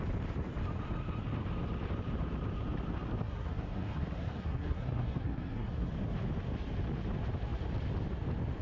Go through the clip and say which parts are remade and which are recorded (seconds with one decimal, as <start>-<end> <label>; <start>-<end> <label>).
0.0-3.2 recorded; 3.2-5.9 remade; 5.9-8.6 recorded